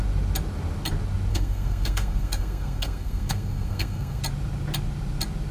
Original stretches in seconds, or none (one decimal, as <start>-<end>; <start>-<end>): 0.0-1.3; 4.2-5.5